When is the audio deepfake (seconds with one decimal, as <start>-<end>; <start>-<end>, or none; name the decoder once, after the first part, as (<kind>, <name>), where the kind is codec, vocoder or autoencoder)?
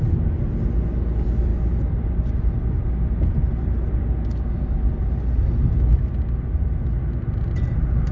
none